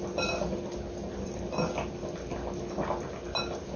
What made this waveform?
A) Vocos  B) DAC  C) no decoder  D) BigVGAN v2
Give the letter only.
C